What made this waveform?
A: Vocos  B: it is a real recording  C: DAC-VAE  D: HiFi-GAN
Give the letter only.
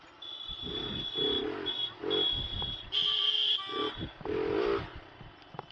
B